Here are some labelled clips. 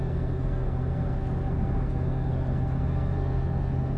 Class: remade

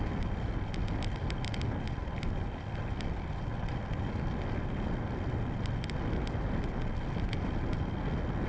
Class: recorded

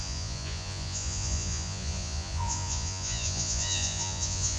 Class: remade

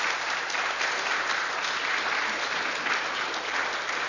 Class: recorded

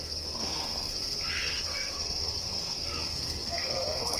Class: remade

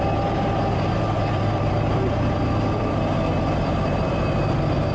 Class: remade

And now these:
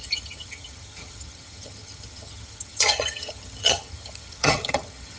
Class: remade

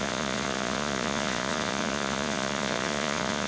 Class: remade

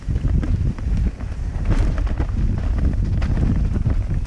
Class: recorded